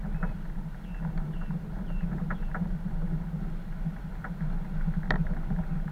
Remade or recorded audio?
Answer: recorded